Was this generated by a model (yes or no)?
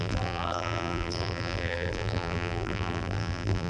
yes